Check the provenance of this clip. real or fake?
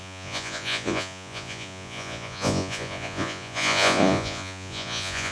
fake